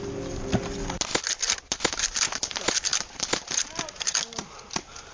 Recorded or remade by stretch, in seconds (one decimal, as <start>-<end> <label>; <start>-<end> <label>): 0.0-5.1 recorded